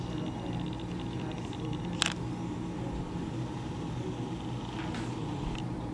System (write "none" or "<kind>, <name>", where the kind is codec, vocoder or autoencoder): none